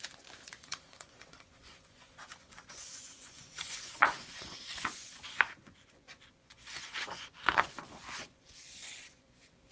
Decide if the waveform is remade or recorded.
remade